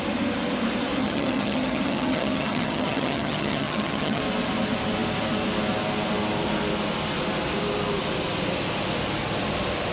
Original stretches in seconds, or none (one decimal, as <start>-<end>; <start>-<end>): 0.0-1.0; 4.2-9.9